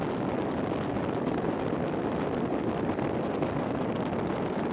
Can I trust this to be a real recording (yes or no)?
yes